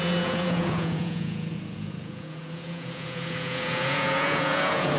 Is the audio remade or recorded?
remade